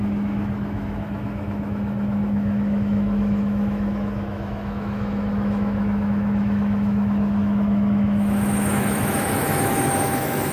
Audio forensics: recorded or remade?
remade